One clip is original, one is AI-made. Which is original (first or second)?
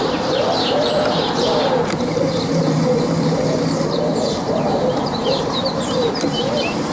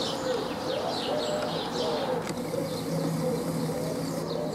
second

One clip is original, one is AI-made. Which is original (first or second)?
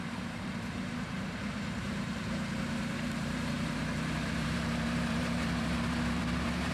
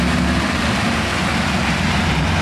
second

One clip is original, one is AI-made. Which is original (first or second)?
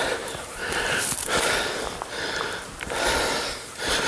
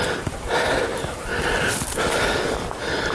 second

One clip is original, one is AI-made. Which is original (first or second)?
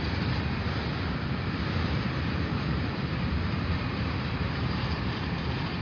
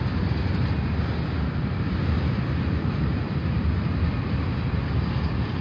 second